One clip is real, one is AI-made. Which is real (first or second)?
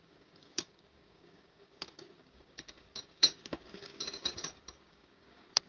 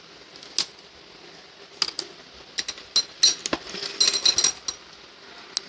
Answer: second